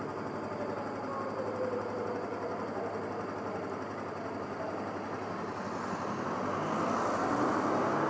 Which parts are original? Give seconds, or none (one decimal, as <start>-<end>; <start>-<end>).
0.0-8.1